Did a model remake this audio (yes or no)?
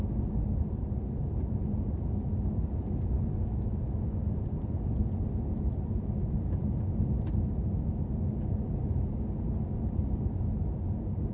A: no